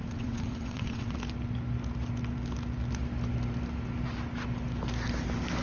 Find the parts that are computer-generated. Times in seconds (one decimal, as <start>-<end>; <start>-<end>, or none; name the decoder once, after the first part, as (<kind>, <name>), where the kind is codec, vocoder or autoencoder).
0.0-1.2 (vocoder, WaveNeXt)